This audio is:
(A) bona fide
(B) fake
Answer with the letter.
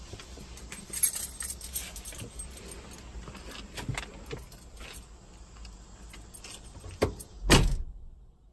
A